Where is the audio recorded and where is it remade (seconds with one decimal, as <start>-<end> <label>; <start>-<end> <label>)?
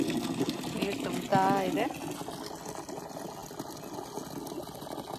0.0-5.2 recorded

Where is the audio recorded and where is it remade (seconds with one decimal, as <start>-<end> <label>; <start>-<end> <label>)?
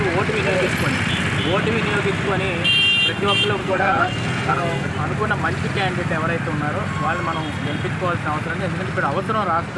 0.0-3.6 recorded; 3.6-4.9 remade; 4.9-9.8 recorded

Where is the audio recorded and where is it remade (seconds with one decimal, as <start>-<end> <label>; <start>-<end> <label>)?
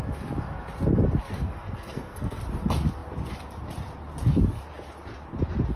0.0-1.2 recorded; 1.2-2.4 remade; 2.4-5.8 recorded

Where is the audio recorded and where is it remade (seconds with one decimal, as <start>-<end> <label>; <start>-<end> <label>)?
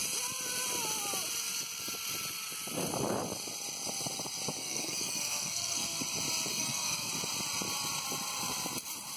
0.0-4.6 recorded; 4.6-6.0 remade; 6.0-6.5 recorded; 6.5-7.1 remade; 7.1-9.2 recorded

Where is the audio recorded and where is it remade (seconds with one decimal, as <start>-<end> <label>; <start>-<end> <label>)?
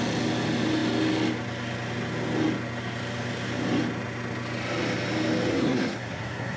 0.0-5.5 recorded; 5.5-6.6 remade